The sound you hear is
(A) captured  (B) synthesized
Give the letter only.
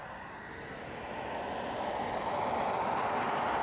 A